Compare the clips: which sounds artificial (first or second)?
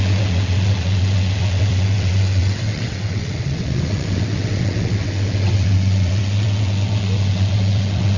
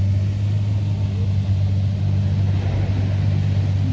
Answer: first